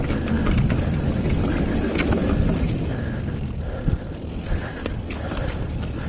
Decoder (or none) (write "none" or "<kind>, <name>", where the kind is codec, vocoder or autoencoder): none